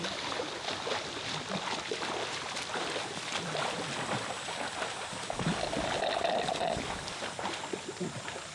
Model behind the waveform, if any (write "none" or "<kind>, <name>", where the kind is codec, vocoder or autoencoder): none